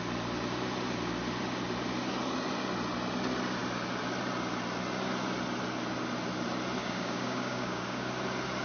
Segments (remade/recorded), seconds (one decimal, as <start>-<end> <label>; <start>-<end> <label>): 0.0-6.8 recorded; 6.8-8.1 remade; 8.1-8.6 recorded